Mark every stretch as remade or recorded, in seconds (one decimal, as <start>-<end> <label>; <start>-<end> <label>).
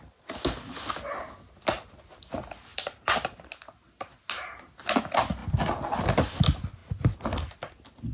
0.0-2.7 recorded; 2.7-3.5 remade; 3.5-8.1 recorded